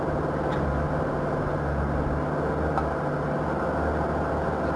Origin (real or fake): real